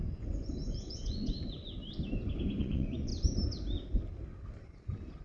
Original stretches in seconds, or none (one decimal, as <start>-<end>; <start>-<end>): 1.8-2.6; 3.1-5.2